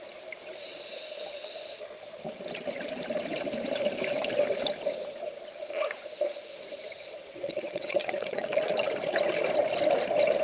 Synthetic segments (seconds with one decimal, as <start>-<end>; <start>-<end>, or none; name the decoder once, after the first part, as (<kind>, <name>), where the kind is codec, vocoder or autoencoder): 7.2-8.7 (vocoder, WaveNeXt)